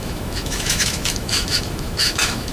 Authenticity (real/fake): fake